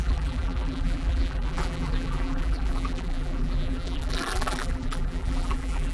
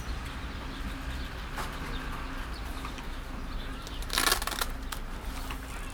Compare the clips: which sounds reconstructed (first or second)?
first